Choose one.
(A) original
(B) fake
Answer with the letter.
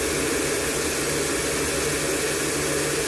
A